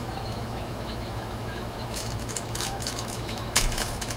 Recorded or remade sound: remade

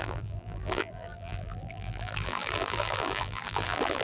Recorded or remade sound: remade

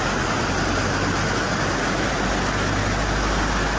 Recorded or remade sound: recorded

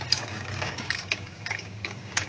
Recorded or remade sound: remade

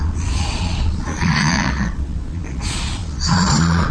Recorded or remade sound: remade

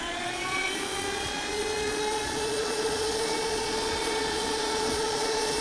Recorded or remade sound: remade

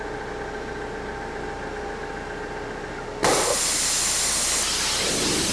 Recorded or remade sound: recorded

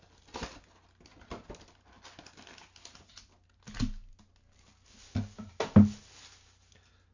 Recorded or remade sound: recorded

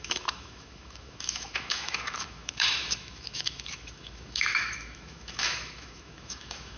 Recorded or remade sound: remade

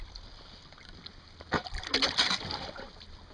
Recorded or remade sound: recorded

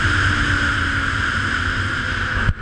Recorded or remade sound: recorded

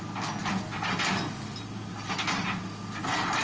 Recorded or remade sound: recorded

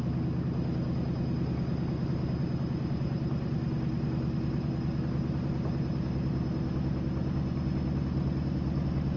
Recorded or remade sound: recorded